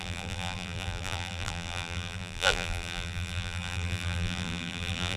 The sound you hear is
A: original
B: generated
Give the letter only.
B